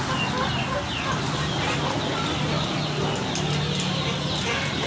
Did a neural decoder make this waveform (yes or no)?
no